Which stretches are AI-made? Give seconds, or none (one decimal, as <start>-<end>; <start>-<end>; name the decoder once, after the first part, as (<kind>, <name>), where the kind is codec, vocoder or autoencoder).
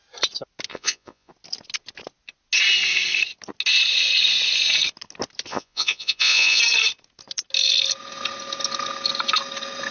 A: 0.7-1.3 (vocoder, Vocos); 5.5-6.6